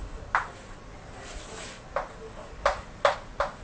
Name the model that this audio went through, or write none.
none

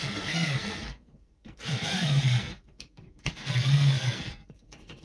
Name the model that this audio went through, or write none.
codec, SNAC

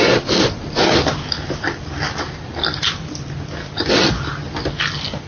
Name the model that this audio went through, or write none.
none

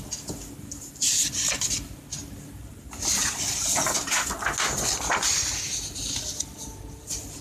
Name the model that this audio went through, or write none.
none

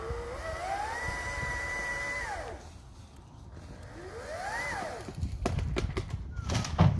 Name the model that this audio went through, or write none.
none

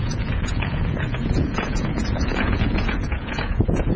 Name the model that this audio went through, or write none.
vocoder, Vocos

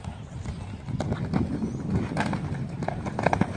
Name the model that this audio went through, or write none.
none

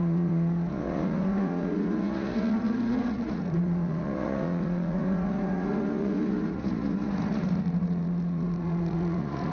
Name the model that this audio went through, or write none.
vocoder, Vocos